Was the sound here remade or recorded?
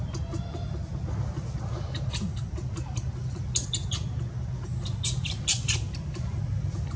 recorded